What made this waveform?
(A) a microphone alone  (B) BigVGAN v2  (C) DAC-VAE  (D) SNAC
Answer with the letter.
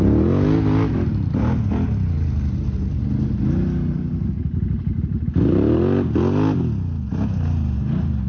A